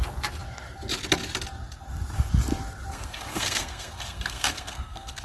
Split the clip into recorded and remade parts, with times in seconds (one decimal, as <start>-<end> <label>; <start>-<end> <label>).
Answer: 0.0-2.9 recorded; 2.9-5.2 remade